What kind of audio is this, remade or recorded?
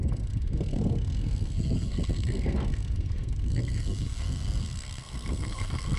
remade